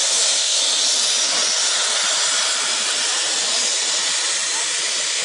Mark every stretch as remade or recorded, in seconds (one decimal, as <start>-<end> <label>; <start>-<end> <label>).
0.0-0.6 remade; 0.6-5.2 recorded